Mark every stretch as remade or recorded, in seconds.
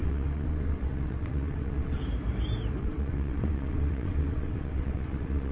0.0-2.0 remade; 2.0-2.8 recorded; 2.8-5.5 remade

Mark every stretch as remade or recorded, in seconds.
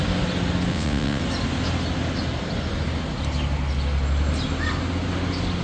0.0-0.7 recorded; 0.7-1.2 remade; 1.2-5.6 recorded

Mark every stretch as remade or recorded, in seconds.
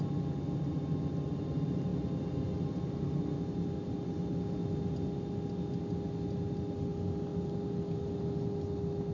0.0-9.1 recorded